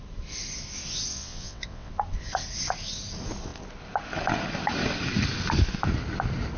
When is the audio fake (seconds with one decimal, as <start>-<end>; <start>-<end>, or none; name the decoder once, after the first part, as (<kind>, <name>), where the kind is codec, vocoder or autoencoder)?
1.1-1.9 (vocoder, WaveNeXt)